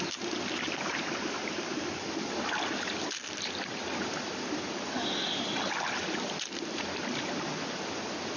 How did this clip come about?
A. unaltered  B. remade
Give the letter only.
A